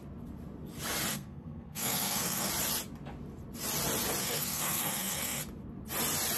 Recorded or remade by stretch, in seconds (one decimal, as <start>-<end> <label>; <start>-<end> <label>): 0.0-1.1 recorded; 1.1-2.5 remade; 2.5-4.2 recorded; 4.2-5.4 remade; 5.4-6.4 recorded